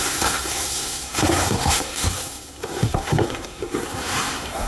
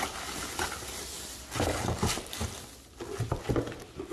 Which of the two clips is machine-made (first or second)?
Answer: first